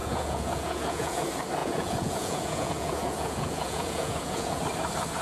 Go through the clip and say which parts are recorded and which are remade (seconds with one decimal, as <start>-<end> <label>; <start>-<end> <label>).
0.0-1.2 remade; 1.2-1.6 recorded; 1.6-4.6 remade; 4.6-5.2 recorded